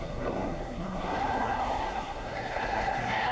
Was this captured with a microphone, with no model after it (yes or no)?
no